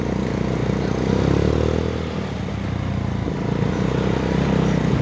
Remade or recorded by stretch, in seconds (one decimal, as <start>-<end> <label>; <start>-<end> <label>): 0.0-5.0 recorded